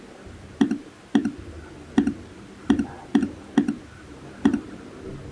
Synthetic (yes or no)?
no